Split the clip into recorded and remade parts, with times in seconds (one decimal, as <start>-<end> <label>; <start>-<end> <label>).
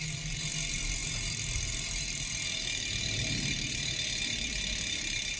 0.0-5.4 recorded